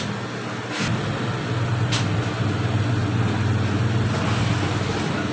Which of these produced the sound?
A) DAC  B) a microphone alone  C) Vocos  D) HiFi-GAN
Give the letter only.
B